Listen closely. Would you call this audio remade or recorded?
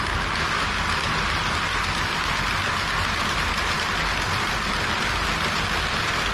recorded